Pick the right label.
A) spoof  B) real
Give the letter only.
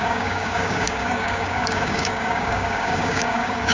A